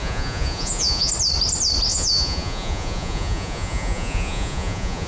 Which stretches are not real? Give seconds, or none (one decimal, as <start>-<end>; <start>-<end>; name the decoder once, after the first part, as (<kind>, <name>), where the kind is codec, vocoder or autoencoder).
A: 0.0-1.1 (vocoder, Vocos); 1.9-5.1